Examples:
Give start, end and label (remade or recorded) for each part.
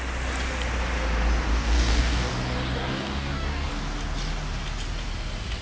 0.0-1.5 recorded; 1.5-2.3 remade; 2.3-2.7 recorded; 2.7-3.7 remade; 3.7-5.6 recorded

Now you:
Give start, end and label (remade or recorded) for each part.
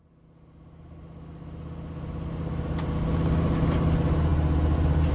0.0-5.1 recorded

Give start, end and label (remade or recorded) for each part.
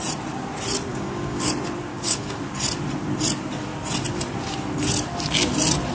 0.0-0.9 recorded; 0.9-1.5 remade; 1.5-1.9 recorded; 1.9-2.4 remade; 2.4-5.9 recorded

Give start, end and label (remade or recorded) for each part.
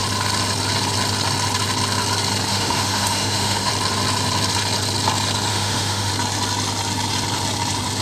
0.0-2.5 recorded; 2.5-3.7 remade; 3.7-5.5 recorded; 5.5-6.1 remade; 6.1-8.0 recorded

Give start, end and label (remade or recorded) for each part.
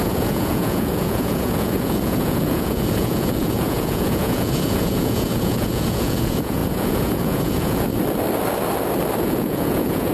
0.0-7.9 remade; 7.9-9.2 recorded; 9.2-10.1 remade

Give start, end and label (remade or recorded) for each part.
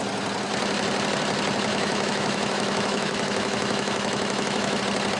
0.0-1.7 recorded; 1.7-4.8 remade; 4.8-5.2 recorded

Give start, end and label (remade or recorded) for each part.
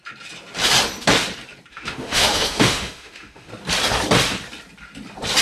0.0-1.7 recorded; 1.7-3.5 remade; 3.5-5.4 recorded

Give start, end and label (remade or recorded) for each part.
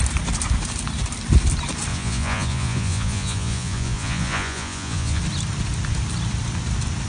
0.0-1.9 recorded; 1.9-5.2 remade; 5.2-7.1 recorded